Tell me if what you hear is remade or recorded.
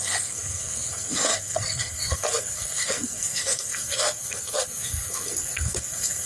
remade